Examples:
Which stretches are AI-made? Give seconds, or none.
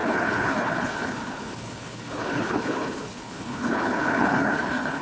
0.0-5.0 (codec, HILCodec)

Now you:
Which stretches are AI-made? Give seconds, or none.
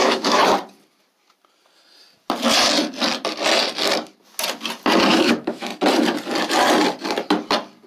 0.0-0.4 (autoencoder, DAC-VAE); 5.1-5.7